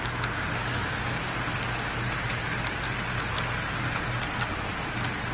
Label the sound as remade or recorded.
recorded